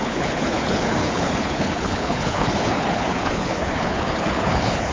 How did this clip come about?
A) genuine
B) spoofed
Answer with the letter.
B